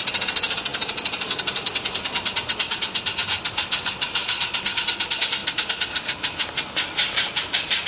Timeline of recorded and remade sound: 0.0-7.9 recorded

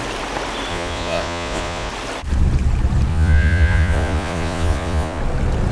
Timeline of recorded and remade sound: 0.0-0.7 recorded; 0.7-1.9 remade; 1.9-3.1 recorded; 3.1-5.2 remade; 5.2-5.7 recorded